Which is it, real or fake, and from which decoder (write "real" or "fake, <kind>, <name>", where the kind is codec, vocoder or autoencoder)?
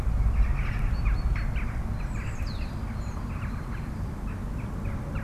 real